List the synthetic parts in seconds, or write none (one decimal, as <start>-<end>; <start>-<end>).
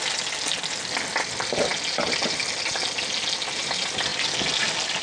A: none